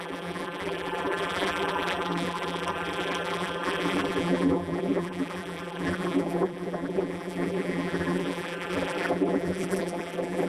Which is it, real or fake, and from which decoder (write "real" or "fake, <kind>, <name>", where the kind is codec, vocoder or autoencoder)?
fake, vocoder, BigVGAN v2